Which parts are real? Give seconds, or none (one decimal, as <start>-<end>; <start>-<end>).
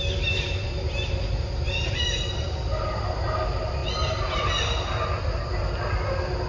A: 0.0-6.5